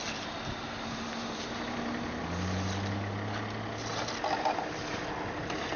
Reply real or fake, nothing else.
real